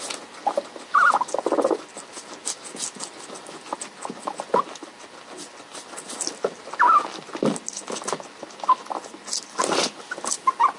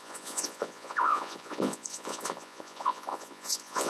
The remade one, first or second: second